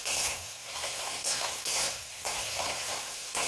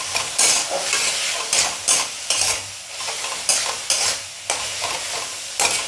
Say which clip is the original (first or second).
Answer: second